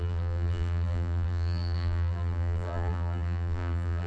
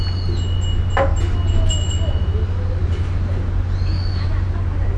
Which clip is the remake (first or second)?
first